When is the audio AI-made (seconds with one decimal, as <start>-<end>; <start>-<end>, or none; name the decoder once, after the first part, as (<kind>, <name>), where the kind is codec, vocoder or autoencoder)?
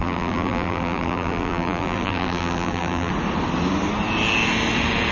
0.0-3.1 (vocoder, BigVGAN v2)